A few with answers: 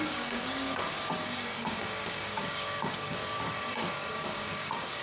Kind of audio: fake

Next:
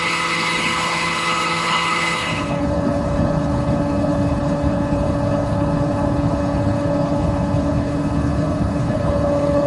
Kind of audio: fake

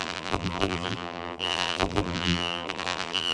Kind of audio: fake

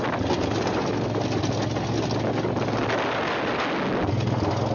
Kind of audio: real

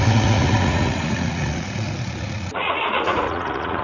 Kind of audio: fake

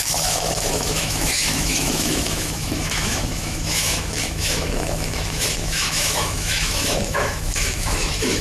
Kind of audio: fake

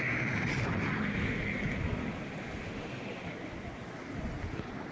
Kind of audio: real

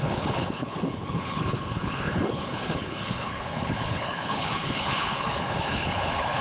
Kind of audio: fake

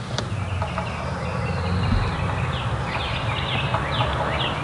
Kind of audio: real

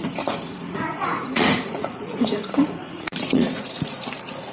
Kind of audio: fake